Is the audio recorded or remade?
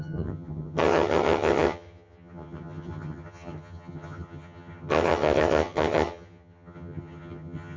remade